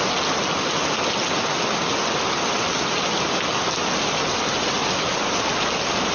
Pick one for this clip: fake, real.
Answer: real